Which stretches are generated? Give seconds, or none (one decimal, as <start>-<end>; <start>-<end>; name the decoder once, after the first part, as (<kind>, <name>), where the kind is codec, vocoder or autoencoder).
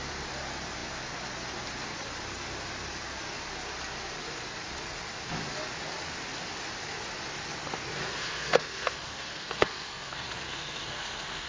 8.0-11.5 (codec, SNAC)